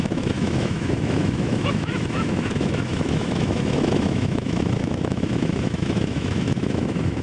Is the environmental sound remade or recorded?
remade